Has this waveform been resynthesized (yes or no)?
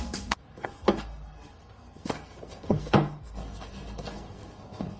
yes